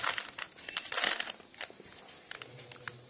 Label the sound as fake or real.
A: fake